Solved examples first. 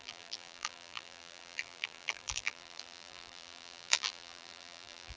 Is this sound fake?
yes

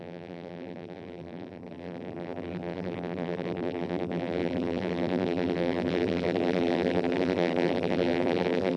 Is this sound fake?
yes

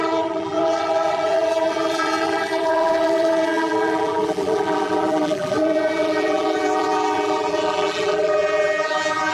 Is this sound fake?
yes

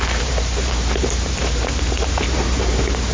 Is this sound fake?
yes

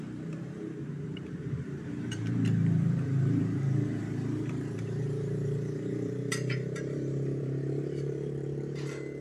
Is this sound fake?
yes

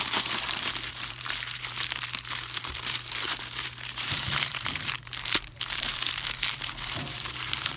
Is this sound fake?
yes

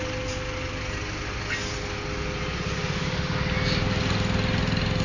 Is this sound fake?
no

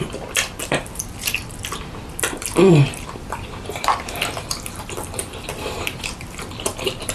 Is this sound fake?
yes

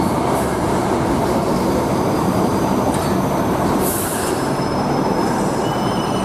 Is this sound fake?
yes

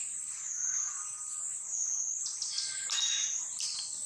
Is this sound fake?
no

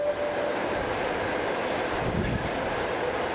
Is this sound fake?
no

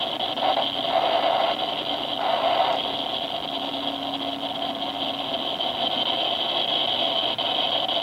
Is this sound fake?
no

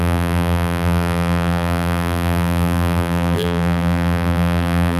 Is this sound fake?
yes